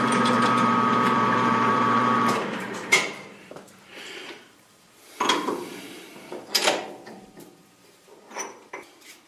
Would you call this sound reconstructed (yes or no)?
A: yes